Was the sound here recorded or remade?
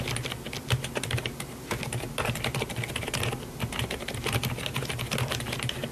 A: recorded